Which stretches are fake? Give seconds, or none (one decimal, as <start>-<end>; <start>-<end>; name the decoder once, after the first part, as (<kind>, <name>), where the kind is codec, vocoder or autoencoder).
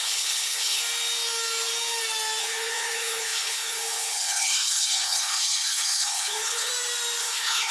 0.0-0.8 (codec, HILCodec); 2.4-6.7; 7.2-7.7